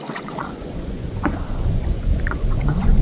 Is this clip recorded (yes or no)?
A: no